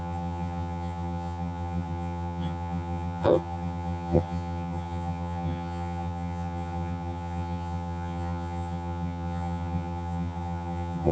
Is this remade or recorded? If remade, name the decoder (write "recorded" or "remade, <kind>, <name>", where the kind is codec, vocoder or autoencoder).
remade, vocoder, HiFi-GAN